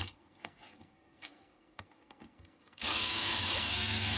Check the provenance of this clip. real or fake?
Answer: fake